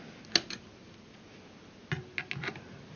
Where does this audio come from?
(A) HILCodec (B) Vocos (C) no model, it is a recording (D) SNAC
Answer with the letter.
C